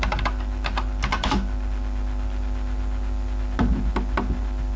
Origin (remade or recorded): recorded